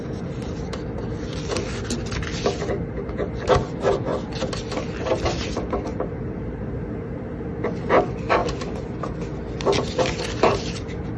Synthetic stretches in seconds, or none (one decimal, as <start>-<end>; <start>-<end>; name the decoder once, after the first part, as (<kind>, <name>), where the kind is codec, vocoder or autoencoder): 5.9-6.9 (vocoder, BigVGAN v2)